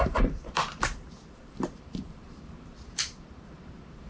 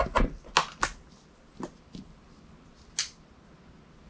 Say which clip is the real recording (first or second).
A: second